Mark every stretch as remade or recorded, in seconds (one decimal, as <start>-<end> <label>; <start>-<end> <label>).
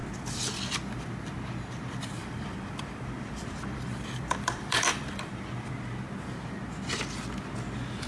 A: 0.0-2.2 recorded; 2.2-5.7 remade; 5.7-8.1 recorded